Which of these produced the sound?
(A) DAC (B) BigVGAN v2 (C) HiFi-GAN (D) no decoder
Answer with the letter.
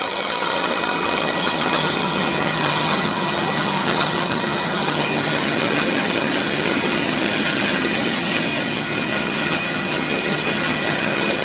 C